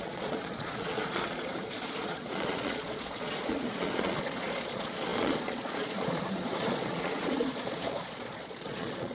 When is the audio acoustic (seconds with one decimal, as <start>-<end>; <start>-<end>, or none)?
none